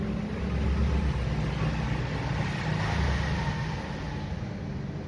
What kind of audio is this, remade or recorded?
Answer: recorded